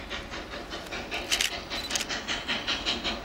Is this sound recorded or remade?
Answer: recorded